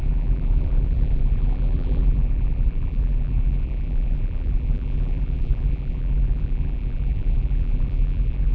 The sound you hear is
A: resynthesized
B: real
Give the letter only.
A